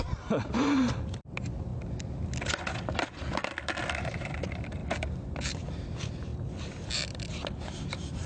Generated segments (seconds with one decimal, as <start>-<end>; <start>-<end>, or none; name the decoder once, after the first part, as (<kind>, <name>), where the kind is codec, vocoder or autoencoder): 0.0-1.7 (vocoder, BigVGAN v2); 4.0-4.8; 5.5-6.3; 7.6-8.3